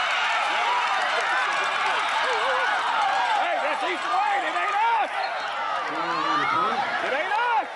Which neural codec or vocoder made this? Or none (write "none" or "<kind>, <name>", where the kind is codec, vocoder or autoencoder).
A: none